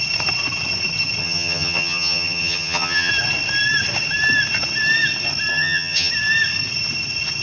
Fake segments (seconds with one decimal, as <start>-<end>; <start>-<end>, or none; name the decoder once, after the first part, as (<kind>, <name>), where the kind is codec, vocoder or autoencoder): 1.2-3.1 (vocoder, HiFi-GAN); 5.5-6.1